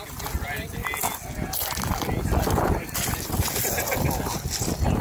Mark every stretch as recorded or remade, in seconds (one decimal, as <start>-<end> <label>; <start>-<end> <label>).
0.0-5.0 recorded